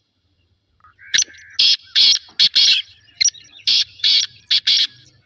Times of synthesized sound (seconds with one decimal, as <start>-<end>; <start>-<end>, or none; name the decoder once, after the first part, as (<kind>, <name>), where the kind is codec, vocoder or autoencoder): 3.5-4.2 (vocoder, BigVGAN v2)